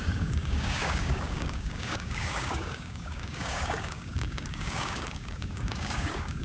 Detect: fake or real fake